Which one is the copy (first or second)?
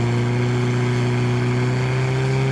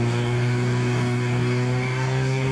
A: second